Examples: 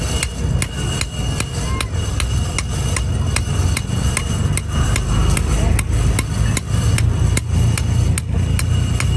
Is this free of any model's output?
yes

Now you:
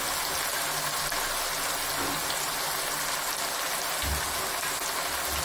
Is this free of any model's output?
yes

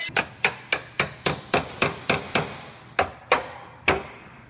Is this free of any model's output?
yes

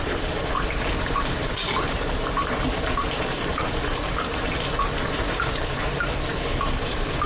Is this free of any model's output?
no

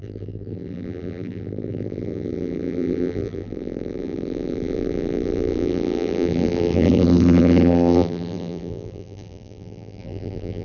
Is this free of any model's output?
no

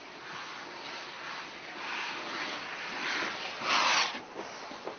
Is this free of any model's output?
yes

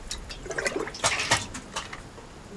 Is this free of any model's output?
yes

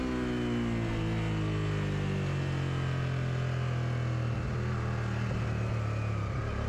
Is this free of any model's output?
yes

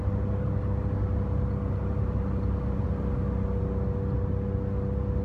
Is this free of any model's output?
yes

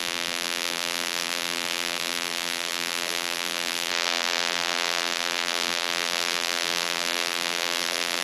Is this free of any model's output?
no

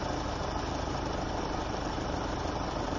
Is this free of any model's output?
no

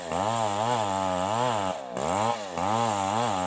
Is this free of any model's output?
yes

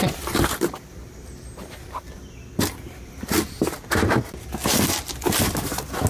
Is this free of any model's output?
yes